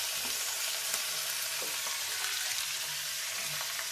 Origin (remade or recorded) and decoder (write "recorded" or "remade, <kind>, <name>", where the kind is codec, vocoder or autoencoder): recorded